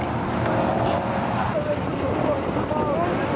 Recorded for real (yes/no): yes